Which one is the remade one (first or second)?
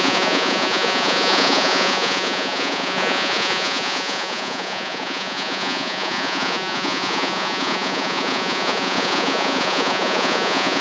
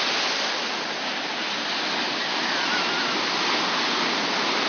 first